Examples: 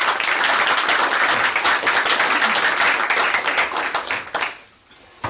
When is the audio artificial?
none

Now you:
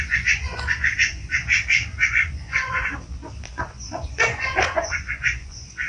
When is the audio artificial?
0.0-1.4 (vocoder, Vocos); 2.1-2.9; 3.5-5.9

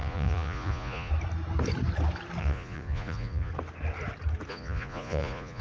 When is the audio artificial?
0.0-1.1 (vocoder, Vocos); 2.4-3.5; 4.5-5.6

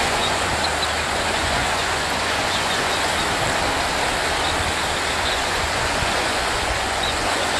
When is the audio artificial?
0.0-0.5 (vocoder, Vocos); 1.1-3.1; 5.2-7.6

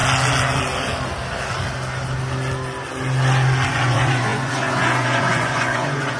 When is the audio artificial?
3.7-6.2 (vocoder, Vocos)

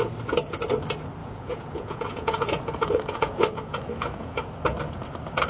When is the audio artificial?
1.2-4.5 (vocoder, Vocos)